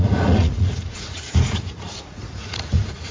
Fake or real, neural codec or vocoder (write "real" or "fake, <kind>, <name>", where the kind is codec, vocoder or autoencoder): fake, vocoder, Vocos